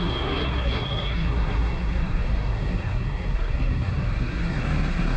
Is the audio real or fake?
fake